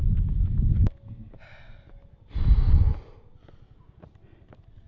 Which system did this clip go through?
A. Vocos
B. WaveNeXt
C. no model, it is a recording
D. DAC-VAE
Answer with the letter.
C